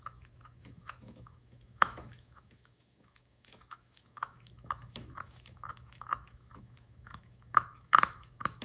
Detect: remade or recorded remade